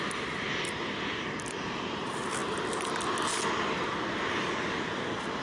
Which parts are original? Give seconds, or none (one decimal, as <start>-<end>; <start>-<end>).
0.0-5.4